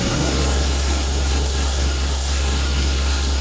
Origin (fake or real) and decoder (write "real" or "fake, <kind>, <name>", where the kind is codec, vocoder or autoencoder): fake, codec, SNAC